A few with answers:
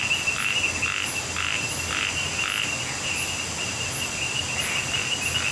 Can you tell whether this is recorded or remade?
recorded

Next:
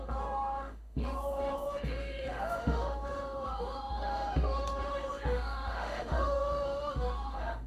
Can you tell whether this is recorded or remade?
remade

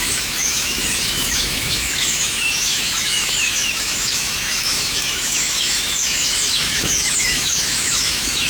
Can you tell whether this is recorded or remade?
remade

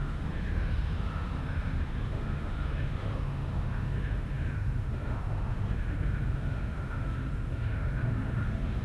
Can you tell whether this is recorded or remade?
remade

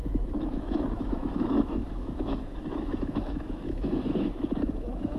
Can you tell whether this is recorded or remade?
remade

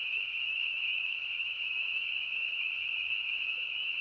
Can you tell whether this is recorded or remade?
remade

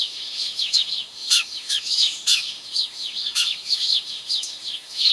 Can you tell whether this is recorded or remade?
remade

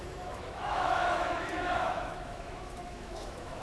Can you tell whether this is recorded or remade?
remade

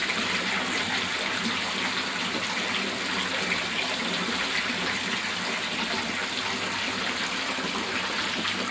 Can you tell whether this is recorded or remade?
recorded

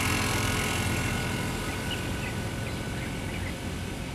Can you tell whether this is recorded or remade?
recorded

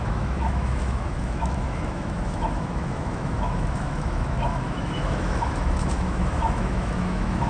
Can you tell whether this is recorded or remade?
remade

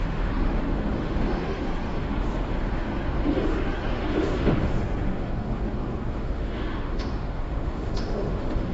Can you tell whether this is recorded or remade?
remade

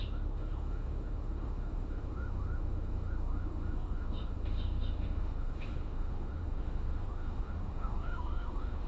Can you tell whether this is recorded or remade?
remade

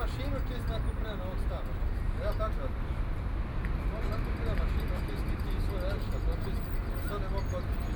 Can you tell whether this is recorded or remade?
recorded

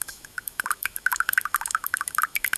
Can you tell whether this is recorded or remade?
remade